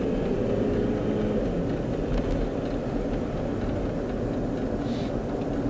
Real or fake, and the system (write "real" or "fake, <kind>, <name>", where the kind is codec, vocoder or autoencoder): real